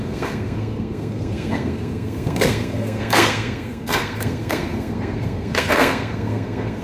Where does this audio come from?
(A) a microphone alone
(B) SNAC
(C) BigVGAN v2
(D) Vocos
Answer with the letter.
B